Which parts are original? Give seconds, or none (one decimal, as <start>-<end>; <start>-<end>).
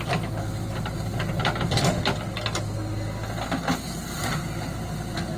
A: 0.0-5.4